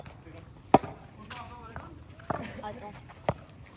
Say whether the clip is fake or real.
fake